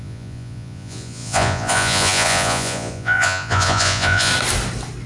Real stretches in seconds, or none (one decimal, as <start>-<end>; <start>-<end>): 4.3-5.1